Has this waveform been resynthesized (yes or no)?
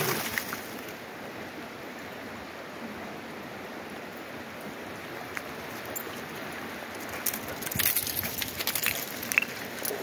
no